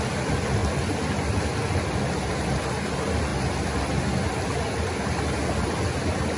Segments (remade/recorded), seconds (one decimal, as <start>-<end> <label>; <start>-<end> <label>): 0.0-6.4 recorded

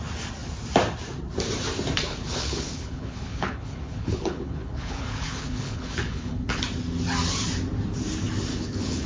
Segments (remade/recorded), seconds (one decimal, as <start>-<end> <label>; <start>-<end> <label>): 0.0-2.1 recorded; 2.1-6.6 remade; 6.6-8.5 recorded; 8.5-9.1 remade